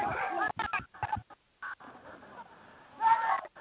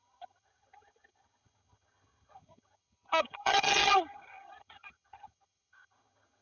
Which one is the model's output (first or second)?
second